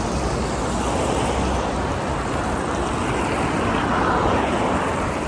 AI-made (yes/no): no